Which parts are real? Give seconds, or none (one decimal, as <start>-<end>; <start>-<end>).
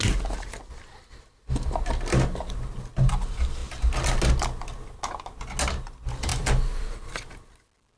0.0-8.0